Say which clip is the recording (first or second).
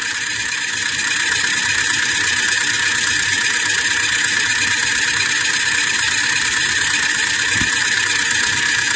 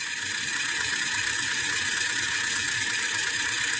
first